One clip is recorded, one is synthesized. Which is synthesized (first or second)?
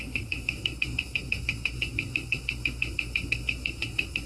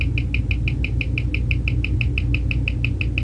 first